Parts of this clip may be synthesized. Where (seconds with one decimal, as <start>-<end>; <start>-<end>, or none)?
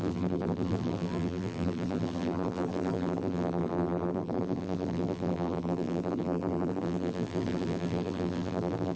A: 0.0-9.0